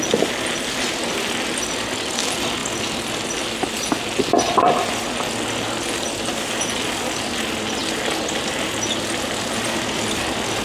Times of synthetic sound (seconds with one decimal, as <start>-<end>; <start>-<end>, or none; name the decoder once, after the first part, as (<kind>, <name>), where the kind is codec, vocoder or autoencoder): none